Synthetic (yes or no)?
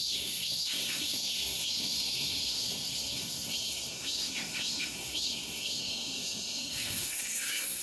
yes